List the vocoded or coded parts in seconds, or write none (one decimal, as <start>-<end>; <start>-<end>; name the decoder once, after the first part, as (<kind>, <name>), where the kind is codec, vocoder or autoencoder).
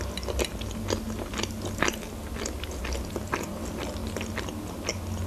none